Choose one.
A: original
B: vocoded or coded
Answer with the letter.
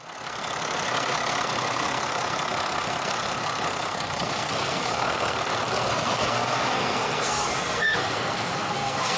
B